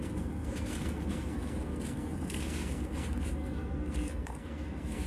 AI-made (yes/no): yes